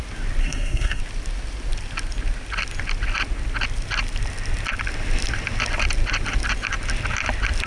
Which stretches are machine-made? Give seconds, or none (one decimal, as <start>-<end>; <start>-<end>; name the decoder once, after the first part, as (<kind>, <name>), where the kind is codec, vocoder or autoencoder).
0.4-1.0 (codec, SNAC)